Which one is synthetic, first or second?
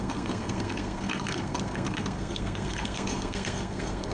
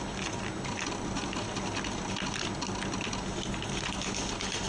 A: first